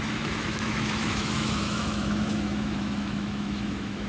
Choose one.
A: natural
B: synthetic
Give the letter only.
B